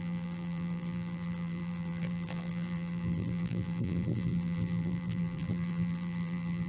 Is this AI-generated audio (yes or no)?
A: yes